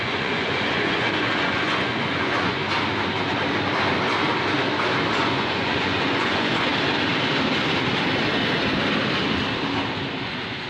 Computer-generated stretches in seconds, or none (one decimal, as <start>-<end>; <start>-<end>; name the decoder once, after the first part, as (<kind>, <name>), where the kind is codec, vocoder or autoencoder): 0.0-2.6 (vocoder, Vocos); 5.1-6.7; 10.2-10.7